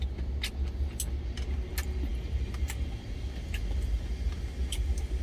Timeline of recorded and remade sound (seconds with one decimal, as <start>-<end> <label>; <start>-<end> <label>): 0.0-5.2 recorded

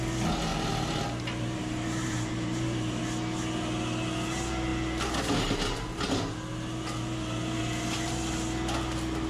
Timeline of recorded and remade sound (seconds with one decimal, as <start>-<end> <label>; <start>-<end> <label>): 0.0-0.5 recorded; 0.5-3.0 remade; 3.0-9.3 recorded

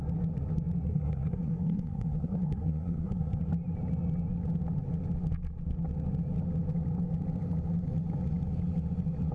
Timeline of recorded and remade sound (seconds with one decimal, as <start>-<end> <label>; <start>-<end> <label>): 0.0-0.9 recorded; 0.9-3.4 remade; 3.4-9.3 recorded

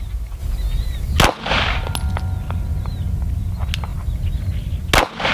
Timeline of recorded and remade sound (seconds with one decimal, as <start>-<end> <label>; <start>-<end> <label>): 0.0-0.4 recorded; 0.4-1.2 remade; 1.2-3.9 recorded; 3.9-4.7 remade; 4.7-5.3 recorded